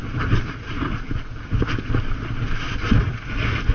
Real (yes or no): yes